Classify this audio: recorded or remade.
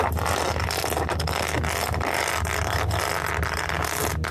recorded